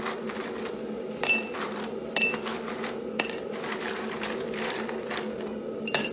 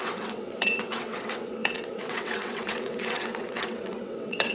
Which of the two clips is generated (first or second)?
second